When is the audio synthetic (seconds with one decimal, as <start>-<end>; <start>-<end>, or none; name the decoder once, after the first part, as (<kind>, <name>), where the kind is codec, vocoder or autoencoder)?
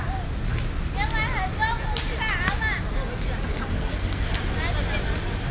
3.5-4.3 (codec, SNAC)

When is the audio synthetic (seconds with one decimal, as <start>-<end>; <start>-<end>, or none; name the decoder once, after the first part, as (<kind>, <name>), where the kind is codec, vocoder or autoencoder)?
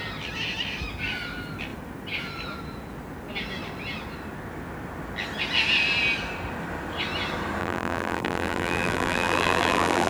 7.6-10.1 (vocoder, BigVGAN v2)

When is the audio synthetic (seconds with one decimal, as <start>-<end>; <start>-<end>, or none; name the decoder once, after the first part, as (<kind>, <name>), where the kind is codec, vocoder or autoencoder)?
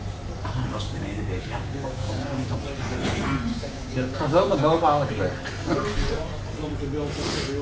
0.7-2.6 (codec, DAC); 3.5-5.1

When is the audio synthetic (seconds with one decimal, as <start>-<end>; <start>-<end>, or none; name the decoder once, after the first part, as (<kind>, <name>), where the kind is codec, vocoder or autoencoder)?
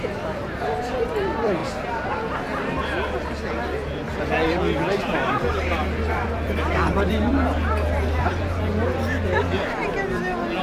0.0-1.6 (vocoder, BigVGAN v2); 5.0-7.3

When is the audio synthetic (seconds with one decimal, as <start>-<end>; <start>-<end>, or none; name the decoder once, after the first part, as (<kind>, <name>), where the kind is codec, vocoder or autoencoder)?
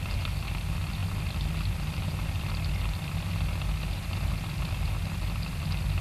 none